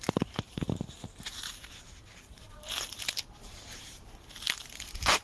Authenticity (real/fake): fake